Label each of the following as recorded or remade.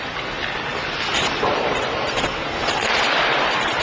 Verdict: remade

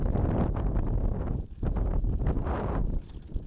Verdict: recorded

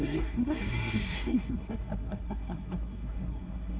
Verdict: remade